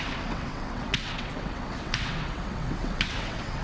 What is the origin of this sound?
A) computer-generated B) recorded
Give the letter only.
A